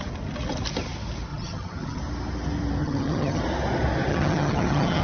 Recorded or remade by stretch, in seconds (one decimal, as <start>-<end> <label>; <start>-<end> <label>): 0.0-1.3 recorded; 1.3-2.0 remade; 2.0-2.8 recorded; 2.8-3.4 remade; 3.4-4.1 recorded; 4.1-5.0 remade